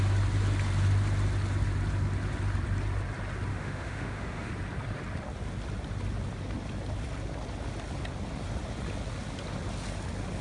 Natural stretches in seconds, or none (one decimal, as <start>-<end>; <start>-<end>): 0.0-3.5; 4.5-10.4